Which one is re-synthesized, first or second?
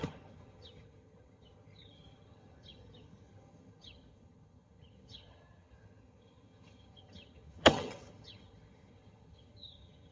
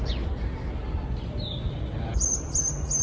first